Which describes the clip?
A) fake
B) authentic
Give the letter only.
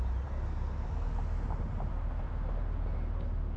B